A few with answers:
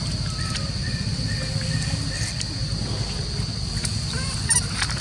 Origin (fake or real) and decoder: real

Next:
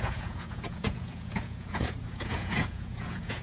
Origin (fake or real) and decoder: fake, vocoder, Vocos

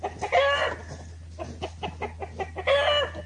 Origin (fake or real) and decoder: real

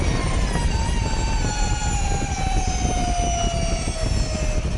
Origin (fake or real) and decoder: real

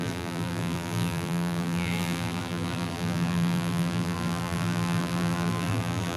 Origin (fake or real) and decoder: fake, vocoder, BigVGAN v2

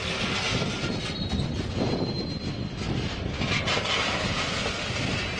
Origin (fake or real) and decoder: real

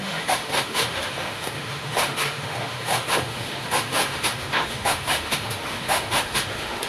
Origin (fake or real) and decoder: fake, autoencoder, DAC-VAE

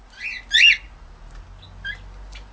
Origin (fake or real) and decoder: real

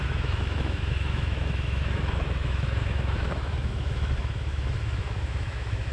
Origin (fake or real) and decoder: fake, autoencoder, DAC-VAE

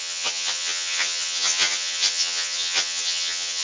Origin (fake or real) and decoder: fake, vocoder, HiFi-GAN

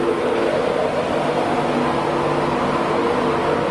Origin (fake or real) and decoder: real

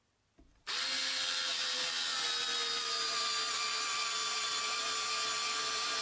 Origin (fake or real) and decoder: real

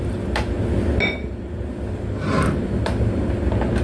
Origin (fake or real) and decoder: real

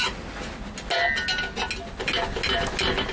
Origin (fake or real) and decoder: real